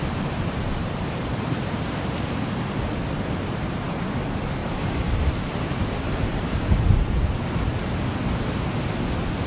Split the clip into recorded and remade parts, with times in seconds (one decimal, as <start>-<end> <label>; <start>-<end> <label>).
0.0-0.8 recorded; 0.8-2.4 remade; 2.4-4.6 recorded; 4.6-7.4 remade; 7.4-9.5 recorded